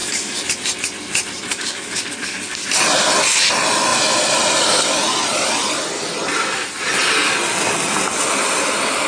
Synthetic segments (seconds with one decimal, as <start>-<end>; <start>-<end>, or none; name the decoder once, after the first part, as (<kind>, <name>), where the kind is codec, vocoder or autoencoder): 0.0-0.5 (codec, DAC); 1.5-2.7